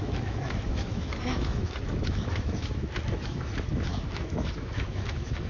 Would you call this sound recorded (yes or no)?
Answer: no